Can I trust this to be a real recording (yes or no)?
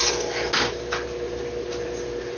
yes